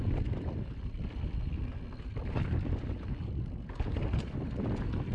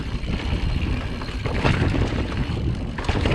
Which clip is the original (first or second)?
first